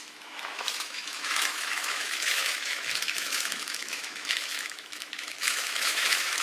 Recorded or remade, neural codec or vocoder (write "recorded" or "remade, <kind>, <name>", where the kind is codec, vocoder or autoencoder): remade, autoencoder, DAC-VAE